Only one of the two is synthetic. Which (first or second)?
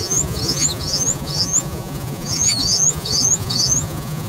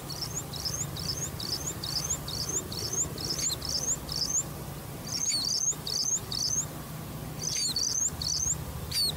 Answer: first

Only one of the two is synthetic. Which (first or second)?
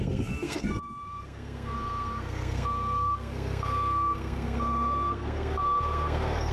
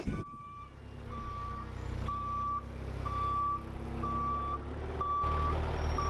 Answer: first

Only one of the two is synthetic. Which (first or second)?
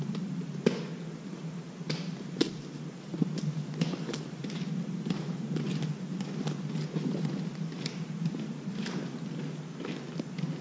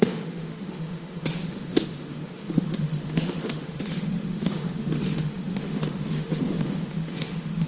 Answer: second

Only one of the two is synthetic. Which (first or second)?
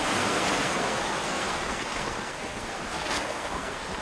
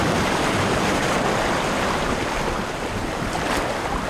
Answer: first